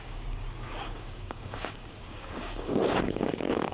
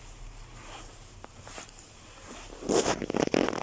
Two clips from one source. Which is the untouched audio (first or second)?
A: second